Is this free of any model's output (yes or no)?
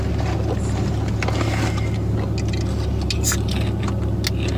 yes